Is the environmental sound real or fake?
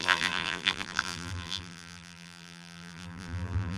fake